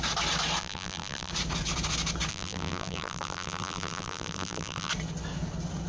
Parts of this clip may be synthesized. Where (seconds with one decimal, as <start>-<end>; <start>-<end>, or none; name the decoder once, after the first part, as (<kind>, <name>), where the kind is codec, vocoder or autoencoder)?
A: 0.6-1.3 (vocoder, BigVGAN v2); 2.3-4.9